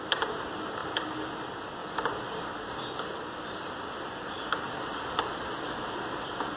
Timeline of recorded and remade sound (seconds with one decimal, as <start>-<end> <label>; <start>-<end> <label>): 0.0-6.6 recorded